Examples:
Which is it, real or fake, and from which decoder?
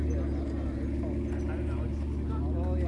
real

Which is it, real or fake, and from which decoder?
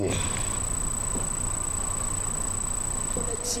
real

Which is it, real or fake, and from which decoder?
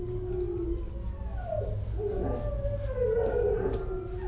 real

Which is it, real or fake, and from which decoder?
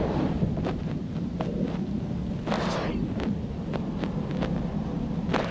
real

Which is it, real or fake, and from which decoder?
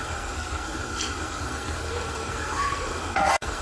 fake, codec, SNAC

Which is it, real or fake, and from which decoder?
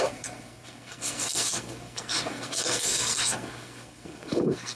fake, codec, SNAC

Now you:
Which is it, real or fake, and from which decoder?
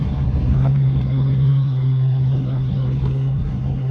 fake, codec, SNAC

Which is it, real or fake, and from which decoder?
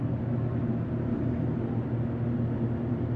real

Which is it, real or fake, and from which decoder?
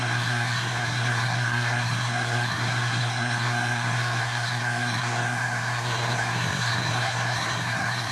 fake, codec, SNAC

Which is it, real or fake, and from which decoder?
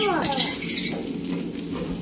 real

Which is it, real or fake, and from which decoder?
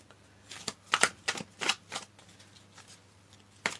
real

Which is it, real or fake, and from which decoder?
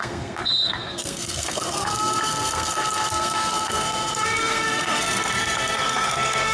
fake, codec, SNAC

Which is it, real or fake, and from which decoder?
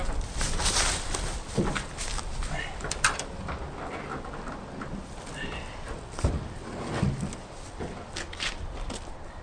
real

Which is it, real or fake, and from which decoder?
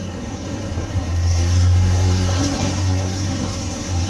fake, codec, SNAC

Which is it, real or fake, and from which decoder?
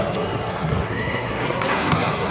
fake, codec, SNAC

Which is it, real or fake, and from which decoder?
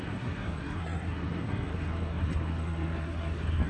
fake, codec, SNAC